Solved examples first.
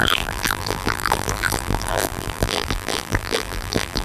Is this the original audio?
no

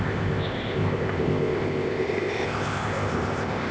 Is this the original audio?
no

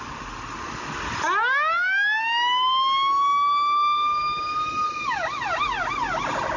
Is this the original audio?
yes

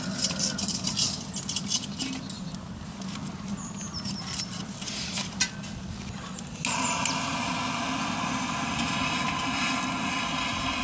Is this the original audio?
yes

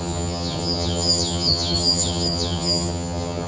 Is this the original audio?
no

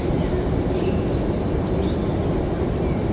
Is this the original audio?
yes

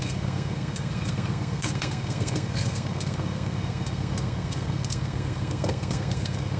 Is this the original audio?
no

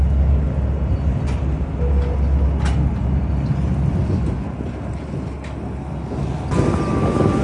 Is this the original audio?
yes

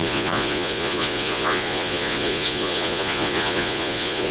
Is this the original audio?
no